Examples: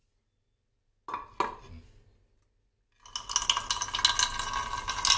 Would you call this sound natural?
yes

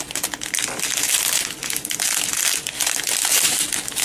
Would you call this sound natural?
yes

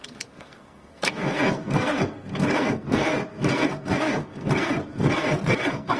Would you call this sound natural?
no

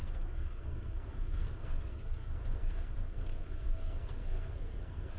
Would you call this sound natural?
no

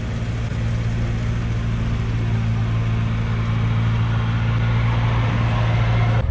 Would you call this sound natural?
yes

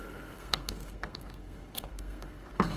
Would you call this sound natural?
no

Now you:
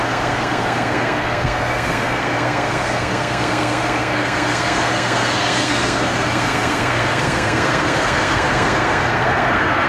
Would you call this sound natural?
no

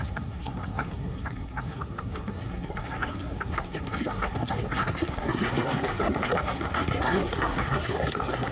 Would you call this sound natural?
no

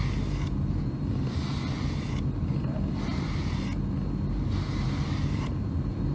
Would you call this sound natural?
yes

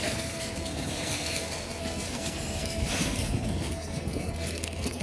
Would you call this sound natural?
no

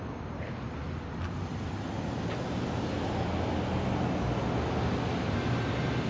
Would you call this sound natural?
yes